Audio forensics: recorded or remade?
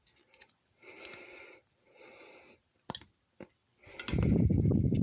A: recorded